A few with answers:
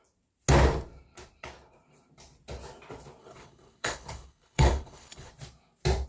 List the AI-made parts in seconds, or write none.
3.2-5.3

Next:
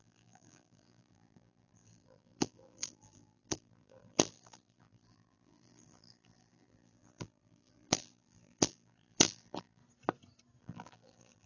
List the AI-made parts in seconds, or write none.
0.0-9.8; 10.6-11.5

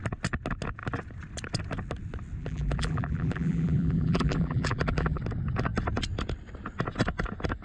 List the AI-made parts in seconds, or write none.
2.4-5.2

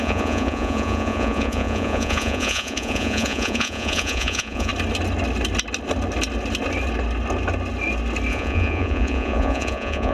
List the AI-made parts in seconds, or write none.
0.0-4.7; 8.3-10.1

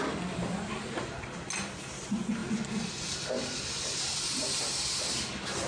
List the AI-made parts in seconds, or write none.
none

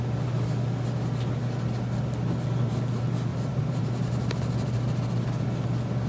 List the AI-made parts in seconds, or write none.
3.3-4.3

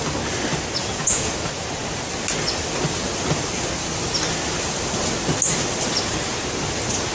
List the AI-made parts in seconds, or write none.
0.8-1.3

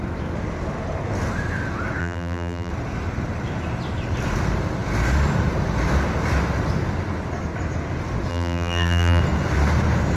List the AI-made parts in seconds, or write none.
2.0-2.7; 8.3-9.2